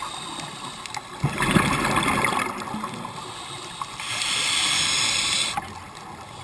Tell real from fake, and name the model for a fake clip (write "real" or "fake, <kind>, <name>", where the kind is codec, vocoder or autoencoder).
real